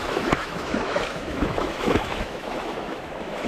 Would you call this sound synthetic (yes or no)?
yes